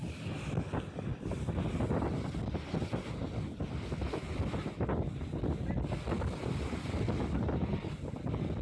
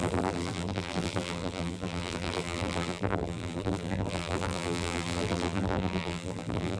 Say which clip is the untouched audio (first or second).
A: first